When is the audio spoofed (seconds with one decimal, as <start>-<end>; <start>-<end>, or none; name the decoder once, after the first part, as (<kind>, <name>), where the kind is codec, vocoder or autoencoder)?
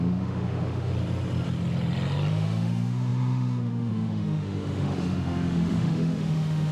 0.0-0.9 (autoencoder, DAC-VAE); 2.3-6.7